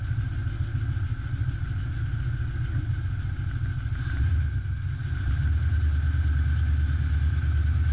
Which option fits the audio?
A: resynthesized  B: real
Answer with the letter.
B